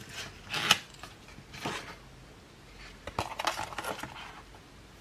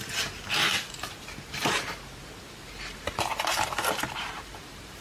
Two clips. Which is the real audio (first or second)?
first